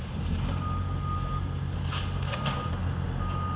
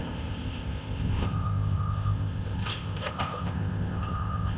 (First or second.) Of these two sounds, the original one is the first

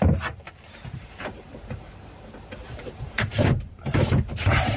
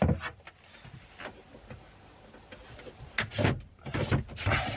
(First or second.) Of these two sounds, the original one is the second